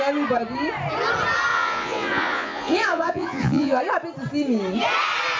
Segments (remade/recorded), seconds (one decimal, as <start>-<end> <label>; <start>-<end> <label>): 0.0-1.5 recorded; 1.5-3.8 remade; 3.8-5.4 recorded